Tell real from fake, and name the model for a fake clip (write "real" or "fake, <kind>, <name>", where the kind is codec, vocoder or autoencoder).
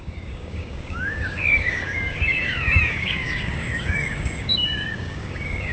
fake, codec, DAC